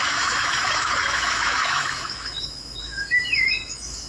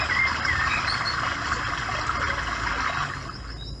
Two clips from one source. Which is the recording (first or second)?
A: second